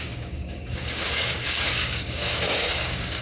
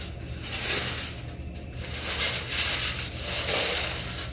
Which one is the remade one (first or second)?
first